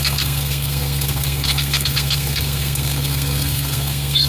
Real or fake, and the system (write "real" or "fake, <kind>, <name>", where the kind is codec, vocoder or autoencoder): fake, codec, SNAC